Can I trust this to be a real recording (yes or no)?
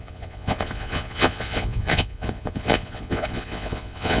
no